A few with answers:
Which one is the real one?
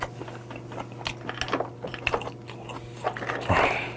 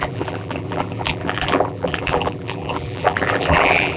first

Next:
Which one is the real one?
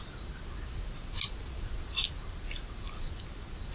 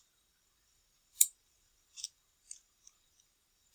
first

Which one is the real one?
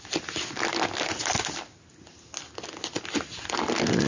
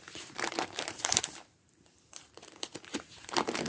first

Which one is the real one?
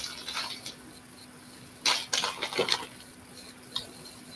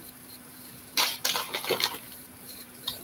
first